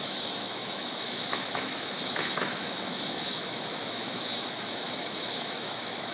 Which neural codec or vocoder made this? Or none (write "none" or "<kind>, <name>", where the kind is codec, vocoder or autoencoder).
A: autoencoder, DAC-VAE